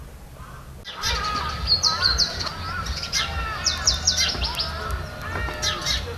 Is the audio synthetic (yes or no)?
no